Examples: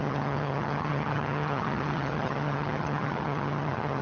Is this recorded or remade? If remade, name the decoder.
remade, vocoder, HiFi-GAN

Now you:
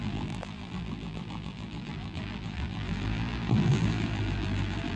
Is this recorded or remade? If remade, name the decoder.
remade, vocoder, BigVGAN v2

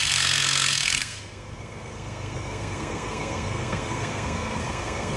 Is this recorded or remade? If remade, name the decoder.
remade, codec, SNAC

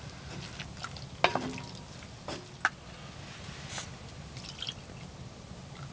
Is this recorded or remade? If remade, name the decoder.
recorded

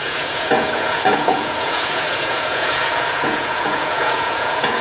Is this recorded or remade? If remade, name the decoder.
remade, vocoder, Vocos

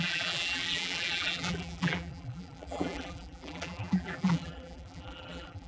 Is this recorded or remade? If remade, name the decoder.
remade, vocoder, BigVGAN v2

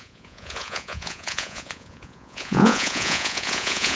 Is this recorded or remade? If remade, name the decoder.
remade, vocoder, Vocos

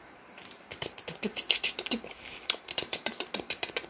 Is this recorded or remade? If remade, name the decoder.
remade, vocoder, BigVGAN v2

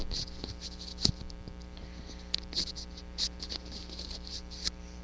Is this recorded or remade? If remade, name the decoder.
remade, vocoder, BigVGAN v2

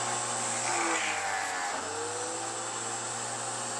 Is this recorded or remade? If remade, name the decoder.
recorded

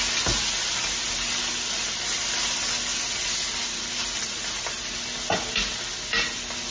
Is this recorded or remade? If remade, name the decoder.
recorded